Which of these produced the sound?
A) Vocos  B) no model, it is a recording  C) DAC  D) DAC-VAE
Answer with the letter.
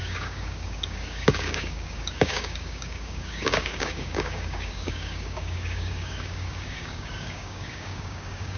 C